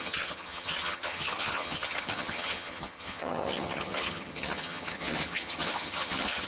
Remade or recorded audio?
remade